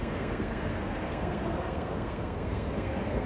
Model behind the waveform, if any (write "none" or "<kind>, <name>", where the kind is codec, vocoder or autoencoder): codec, SNAC